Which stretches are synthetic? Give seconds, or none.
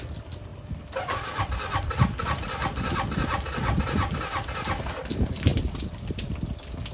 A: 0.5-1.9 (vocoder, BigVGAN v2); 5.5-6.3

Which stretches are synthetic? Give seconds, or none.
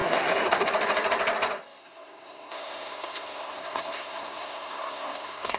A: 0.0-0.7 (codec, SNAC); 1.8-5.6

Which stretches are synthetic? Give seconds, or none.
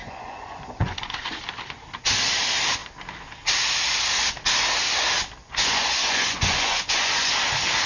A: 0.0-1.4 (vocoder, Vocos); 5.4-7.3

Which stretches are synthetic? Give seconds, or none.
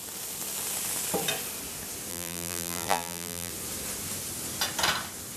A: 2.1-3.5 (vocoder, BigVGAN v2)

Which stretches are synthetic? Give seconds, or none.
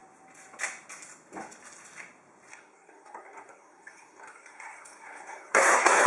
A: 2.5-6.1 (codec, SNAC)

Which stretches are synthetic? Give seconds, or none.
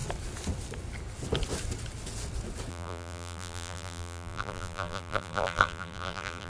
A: 2.7-6.5 (vocoder, BigVGAN v2)